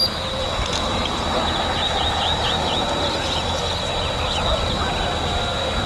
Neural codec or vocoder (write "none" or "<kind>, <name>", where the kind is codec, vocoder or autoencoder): none